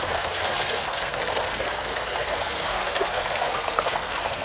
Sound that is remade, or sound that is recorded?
remade